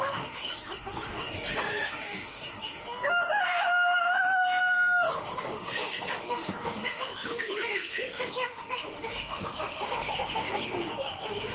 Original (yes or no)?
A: no